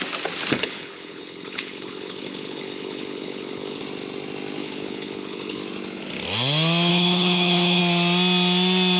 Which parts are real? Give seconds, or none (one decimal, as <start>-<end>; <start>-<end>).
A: 0.0-0.5; 3.8-4.6; 5.6-6.9; 7.8-9.0